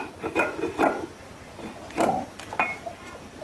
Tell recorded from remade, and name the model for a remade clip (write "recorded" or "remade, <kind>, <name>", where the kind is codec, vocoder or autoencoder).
recorded